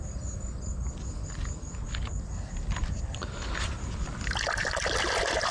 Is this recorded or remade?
recorded